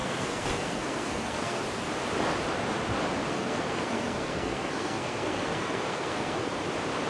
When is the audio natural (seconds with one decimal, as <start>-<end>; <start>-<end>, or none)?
1.6-3.2; 6.5-7.1

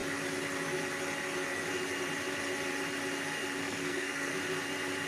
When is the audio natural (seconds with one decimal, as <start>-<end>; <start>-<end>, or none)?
0.0-3.6; 4.4-5.1